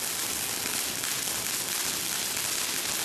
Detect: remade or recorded recorded